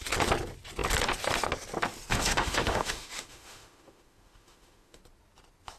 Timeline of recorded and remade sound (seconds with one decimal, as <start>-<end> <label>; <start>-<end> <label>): 0.0-2.1 recorded; 2.1-5.0 remade; 5.0-5.8 recorded